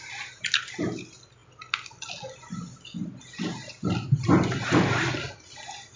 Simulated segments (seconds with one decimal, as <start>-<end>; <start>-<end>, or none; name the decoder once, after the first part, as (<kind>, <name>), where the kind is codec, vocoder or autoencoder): none